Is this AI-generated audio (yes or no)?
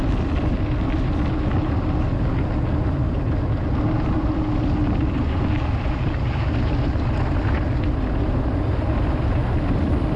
no